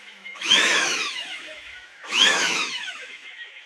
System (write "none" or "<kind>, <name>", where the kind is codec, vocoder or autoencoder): autoencoder, DAC-VAE